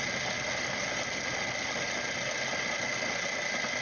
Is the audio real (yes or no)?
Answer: yes